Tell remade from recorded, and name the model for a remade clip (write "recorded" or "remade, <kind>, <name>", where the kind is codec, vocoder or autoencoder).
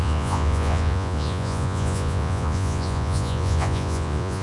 remade, vocoder, Vocos